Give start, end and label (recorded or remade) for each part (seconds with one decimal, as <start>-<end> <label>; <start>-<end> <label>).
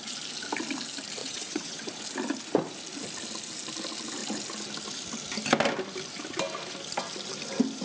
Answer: 0.0-1.2 recorded; 1.2-2.0 remade; 2.0-7.8 recorded